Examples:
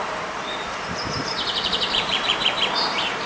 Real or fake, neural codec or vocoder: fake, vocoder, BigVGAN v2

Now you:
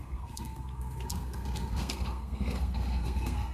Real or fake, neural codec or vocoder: fake, codec, SNAC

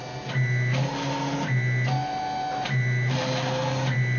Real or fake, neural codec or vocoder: real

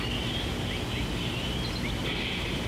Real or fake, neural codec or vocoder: real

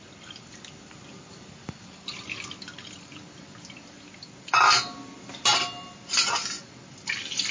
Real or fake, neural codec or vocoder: real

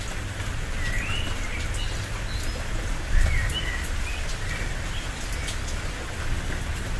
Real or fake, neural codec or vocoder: real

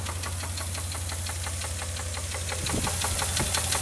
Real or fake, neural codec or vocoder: real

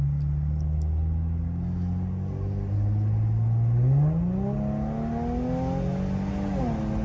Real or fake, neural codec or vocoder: real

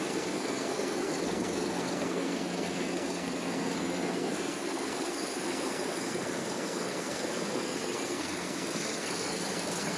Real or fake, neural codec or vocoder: fake, codec, SNAC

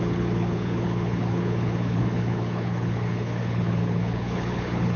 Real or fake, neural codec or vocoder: fake, codec, HILCodec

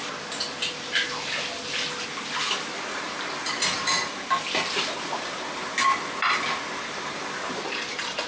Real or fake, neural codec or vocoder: real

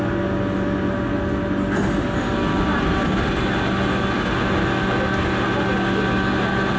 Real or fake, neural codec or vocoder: real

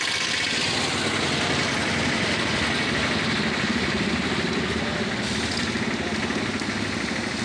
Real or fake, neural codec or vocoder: real